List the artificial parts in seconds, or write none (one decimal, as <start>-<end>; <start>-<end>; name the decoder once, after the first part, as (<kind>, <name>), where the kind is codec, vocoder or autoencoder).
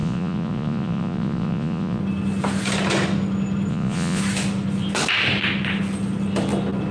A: 0.0-2.0 (vocoder, Vocos); 3.7-4.2